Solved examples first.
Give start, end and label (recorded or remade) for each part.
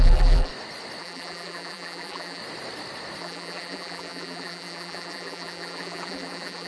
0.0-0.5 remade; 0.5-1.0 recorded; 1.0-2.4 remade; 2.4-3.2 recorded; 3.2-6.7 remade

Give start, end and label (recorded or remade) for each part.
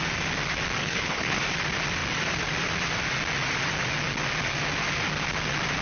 0.0-0.8 recorded; 0.8-1.4 remade; 1.4-5.8 recorded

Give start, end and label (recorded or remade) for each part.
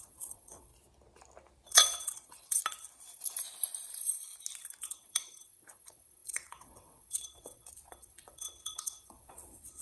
0.0-0.7 remade; 0.7-1.7 recorded; 1.7-2.6 remade; 2.6-4.8 recorded; 4.8-9.8 remade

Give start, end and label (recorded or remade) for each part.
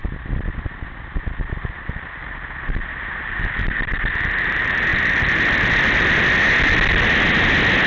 0.0-4.1 remade; 4.1-4.9 recorded; 4.9-6.2 remade; 6.2-7.9 recorded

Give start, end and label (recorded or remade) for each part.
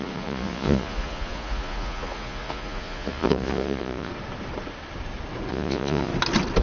0.0-4.1 remade; 4.1-5.5 recorded; 5.5-6.1 remade; 6.1-6.6 recorded